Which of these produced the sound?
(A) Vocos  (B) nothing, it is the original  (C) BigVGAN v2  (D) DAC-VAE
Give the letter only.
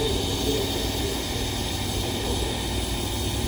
B